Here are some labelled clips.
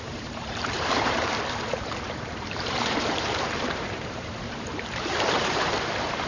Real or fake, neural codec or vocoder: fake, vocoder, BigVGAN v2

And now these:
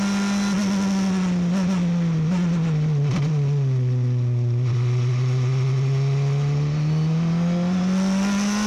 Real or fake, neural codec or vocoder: real